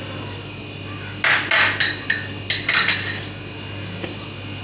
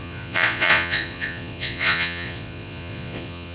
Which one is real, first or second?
first